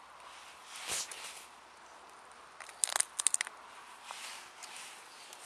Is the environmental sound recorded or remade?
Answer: recorded